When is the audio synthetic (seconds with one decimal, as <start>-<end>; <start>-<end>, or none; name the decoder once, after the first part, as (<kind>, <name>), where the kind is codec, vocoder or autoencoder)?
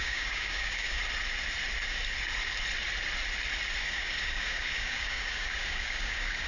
0.0-1.0 (codec, DAC); 3.8-6.5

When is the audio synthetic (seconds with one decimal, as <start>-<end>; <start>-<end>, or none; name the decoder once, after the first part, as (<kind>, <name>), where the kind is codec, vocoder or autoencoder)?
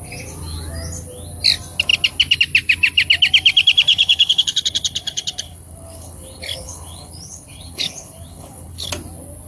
3.9-8.9 (codec, HILCodec)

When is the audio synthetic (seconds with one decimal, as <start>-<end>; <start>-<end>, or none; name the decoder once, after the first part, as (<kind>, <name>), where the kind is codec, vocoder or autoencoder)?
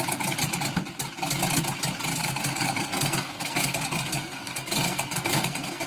2.1-5.9 (codec, SNAC)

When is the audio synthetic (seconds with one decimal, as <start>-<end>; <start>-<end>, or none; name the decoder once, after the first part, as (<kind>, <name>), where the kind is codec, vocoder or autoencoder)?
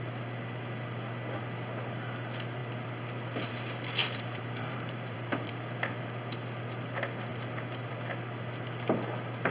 4.0-5.5 (vocoder, BigVGAN v2)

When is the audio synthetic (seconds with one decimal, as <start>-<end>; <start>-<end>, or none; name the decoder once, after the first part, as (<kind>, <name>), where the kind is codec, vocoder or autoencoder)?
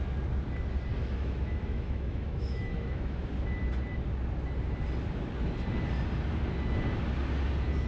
1.0-3.3 (autoencoder, DAC-VAE)